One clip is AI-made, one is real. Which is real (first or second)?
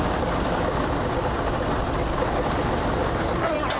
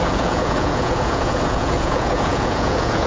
first